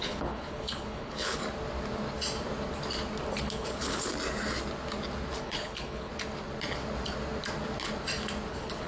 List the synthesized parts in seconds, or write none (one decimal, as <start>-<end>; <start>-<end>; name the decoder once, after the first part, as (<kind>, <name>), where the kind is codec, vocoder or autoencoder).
0.0-1.4 (codec, HILCodec); 3.4-4.1; 5.4-6.1; 8.5-8.9